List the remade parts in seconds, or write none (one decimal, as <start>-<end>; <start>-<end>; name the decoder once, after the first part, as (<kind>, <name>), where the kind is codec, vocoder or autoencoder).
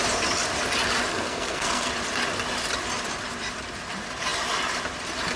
1.1-1.9 (codec, SNAC)